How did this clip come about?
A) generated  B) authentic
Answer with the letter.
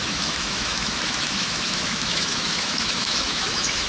A